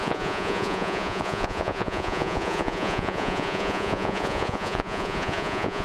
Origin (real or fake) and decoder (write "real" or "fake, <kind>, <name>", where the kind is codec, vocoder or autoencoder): fake, vocoder, Vocos